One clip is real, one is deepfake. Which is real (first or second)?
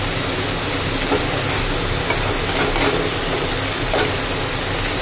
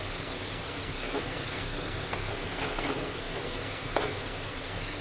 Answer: first